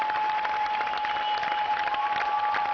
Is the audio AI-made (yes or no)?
no